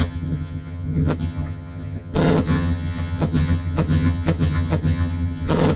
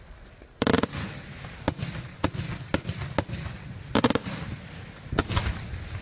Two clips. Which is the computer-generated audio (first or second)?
first